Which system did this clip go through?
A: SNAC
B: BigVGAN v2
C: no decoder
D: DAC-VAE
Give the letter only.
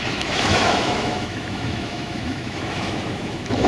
D